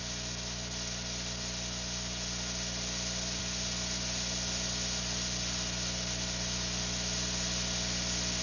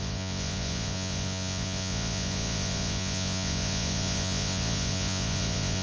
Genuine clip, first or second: first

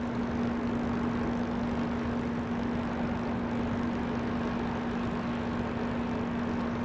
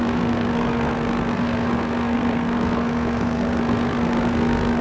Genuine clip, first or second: first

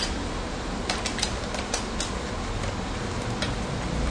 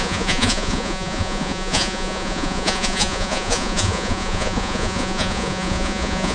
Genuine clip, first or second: first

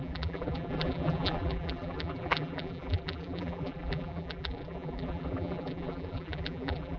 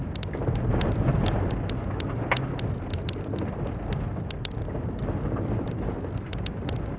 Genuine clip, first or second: second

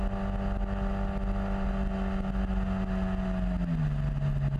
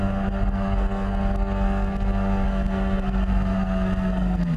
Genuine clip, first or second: first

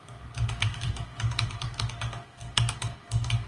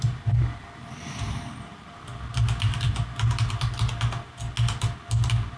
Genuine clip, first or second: second